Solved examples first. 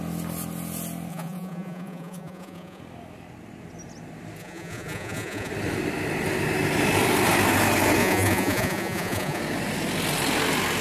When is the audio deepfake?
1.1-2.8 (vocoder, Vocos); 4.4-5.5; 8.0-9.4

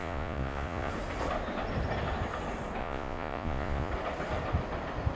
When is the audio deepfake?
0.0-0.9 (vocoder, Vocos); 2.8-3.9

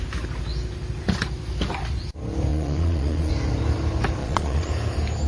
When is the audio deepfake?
2.5-3.3 (vocoder, Vocos); 4.2-4.7

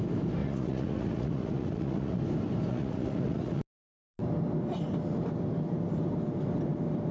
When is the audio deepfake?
0.4-2.2 (vocoder, Vocos); 2.7-3.6

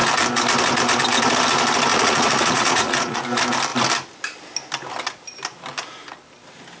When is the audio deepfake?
1.9-3.2 (vocoder, Vocos)

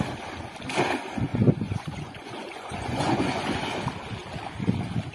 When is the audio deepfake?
1.3-3.6 (vocoder, Vocos)